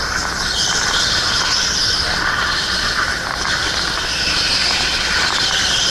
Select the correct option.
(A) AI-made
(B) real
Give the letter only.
B